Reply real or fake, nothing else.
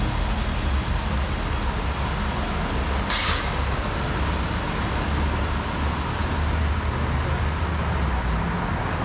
real